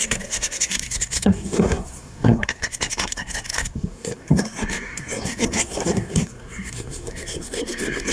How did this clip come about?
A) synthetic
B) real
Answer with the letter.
A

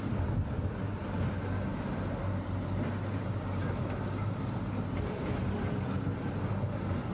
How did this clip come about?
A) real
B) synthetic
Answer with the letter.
A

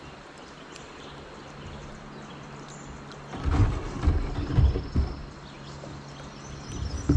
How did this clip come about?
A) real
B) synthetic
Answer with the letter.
A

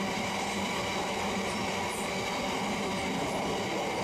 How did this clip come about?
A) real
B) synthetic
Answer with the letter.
A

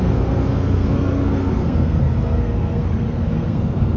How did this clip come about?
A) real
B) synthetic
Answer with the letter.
B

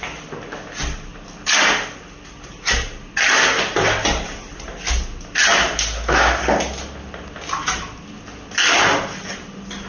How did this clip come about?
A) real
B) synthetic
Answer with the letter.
A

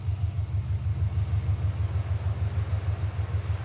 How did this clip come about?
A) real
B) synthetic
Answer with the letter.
A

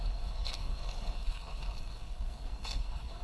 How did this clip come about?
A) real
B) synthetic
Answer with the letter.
B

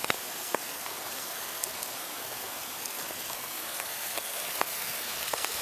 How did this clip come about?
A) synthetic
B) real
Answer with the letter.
A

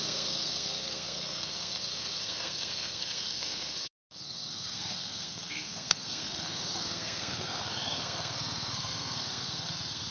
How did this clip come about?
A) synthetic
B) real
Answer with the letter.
A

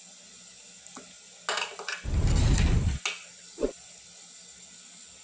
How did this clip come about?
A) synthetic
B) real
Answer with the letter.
B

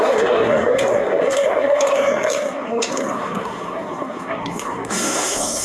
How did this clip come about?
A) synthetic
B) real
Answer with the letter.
A